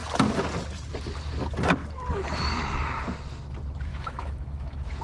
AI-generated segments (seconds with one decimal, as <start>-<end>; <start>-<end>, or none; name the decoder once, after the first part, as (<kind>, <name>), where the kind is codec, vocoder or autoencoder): 3.9-5.0 (autoencoder, DAC-VAE)